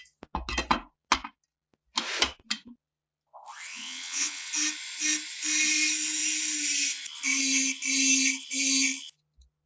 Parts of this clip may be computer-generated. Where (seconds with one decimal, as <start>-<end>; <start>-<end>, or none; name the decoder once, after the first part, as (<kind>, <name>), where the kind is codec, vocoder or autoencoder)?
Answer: 3.7-4.5 (vocoder, WaveNeXt)